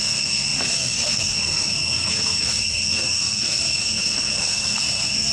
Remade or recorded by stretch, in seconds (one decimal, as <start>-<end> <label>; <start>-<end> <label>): 0.0-5.3 remade